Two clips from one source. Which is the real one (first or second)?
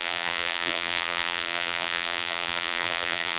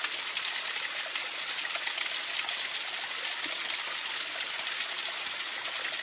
second